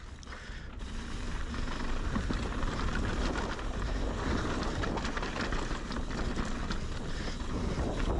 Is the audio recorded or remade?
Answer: recorded